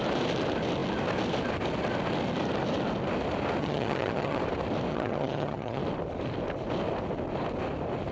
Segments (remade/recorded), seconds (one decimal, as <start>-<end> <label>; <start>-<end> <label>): 0.0-3.6 recorded; 3.6-4.4 remade; 4.4-4.9 recorded; 4.9-5.8 remade; 5.8-8.1 recorded